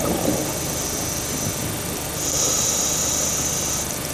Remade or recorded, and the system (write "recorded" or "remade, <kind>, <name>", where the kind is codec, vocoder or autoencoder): recorded